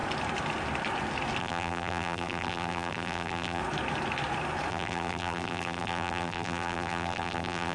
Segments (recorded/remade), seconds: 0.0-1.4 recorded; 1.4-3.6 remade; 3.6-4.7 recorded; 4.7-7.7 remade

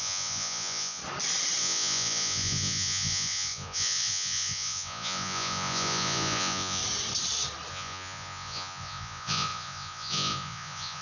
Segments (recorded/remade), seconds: 0.0-1.0 remade; 1.0-1.6 recorded; 1.6-6.8 remade; 6.8-7.7 recorded; 7.7-11.0 remade

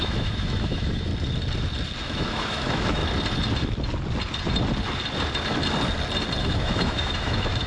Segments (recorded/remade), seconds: 0.0-1.1 remade; 1.1-2.0 recorded; 2.0-3.0 remade; 3.0-6.4 recorded; 6.4-7.7 remade

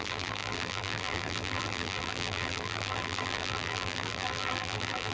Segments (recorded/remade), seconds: 0.0-5.1 remade

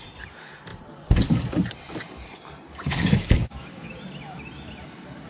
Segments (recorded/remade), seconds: 0.0-2.7 recorded; 2.7-3.9 remade; 3.9-5.3 recorded

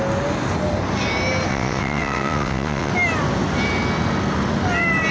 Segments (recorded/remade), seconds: 0.0-1.5 recorded; 1.5-2.9 remade; 2.9-5.1 recorded

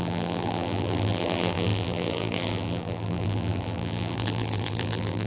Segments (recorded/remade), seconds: 0.0-5.3 remade